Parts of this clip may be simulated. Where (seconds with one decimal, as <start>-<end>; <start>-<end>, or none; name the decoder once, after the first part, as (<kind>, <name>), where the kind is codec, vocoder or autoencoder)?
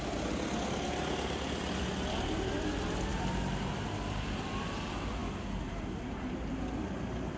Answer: none